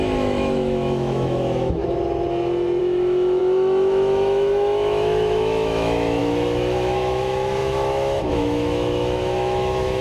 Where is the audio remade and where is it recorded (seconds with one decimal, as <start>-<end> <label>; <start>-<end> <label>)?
0.0-1.8 remade; 1.8-2.8 recorded; 2.8-10.0 remade